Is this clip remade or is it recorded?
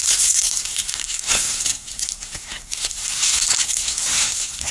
remade